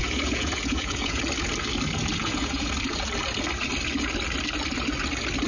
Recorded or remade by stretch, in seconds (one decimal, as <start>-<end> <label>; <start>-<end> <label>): 0.0-1.2 remade; 1.2-2.2 recorded; 2.2-2.7 remade; 2.7-5.5 recorded